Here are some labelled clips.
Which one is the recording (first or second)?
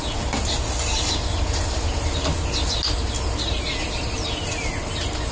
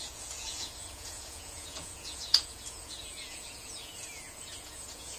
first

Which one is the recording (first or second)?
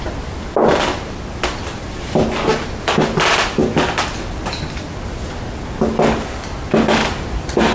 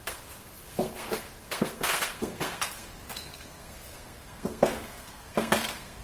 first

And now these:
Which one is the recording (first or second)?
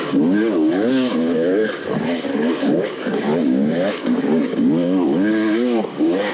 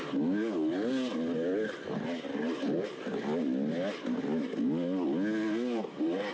second